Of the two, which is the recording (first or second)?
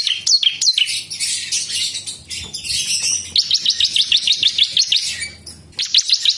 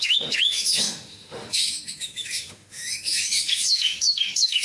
first